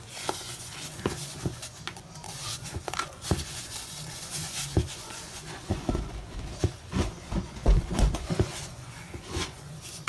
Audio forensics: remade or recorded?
remade